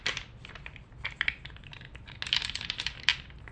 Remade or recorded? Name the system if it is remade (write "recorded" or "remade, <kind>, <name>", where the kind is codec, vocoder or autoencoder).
recorded